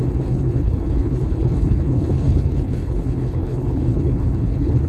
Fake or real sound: fake